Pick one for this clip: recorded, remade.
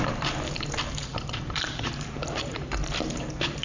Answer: remade